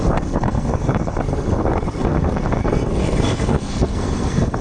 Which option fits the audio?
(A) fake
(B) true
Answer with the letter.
A